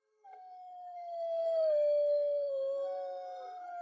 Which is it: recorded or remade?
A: remade